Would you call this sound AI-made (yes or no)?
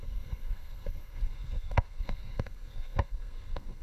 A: yes